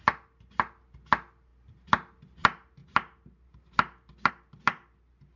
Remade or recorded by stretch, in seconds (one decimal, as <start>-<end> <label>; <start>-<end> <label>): 0.0-5.4 recorded